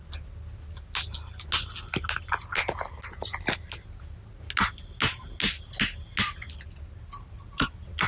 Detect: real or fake real